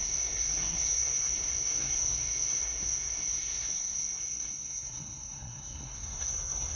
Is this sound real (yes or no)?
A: no